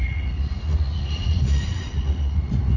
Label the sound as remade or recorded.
remade